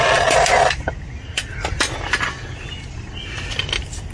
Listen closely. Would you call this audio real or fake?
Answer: real